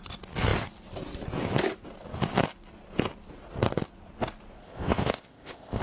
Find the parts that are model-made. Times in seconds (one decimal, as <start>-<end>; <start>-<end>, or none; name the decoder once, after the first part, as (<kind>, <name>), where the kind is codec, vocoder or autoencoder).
4.6-5.8 (codec, ZipCodec)